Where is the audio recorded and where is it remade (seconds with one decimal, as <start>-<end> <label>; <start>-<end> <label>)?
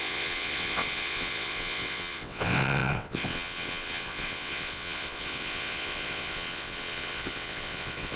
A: 0.0-8.2 remade